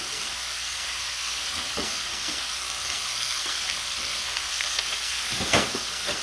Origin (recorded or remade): remade